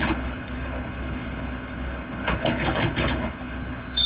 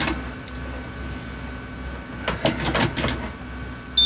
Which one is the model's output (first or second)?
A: first